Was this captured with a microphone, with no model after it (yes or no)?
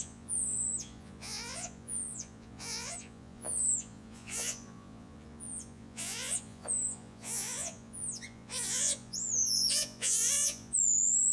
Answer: no